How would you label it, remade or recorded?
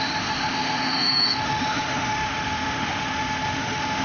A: remade